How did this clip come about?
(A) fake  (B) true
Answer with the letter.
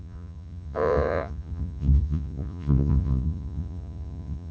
A